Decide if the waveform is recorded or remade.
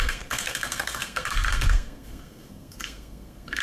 remade